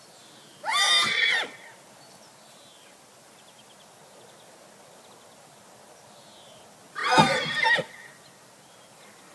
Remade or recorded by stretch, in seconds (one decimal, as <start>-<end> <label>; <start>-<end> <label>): 0.0-9.3 recorded